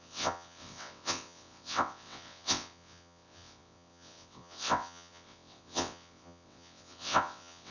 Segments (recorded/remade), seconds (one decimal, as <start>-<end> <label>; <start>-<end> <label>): 0.0-7.7 remade